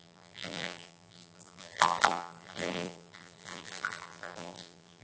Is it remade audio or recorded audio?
remade